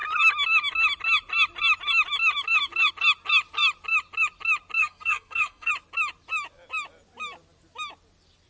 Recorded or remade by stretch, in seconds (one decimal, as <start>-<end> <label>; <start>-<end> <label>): 0.0-4.8 recorded; 4.8-5.7 remade; 5.7-8.5 recorded